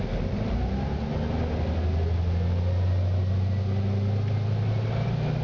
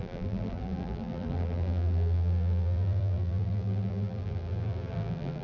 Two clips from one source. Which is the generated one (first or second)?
second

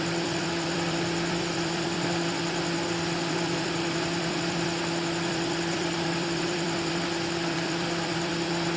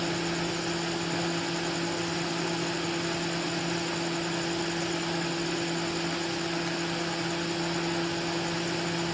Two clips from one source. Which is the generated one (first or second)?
first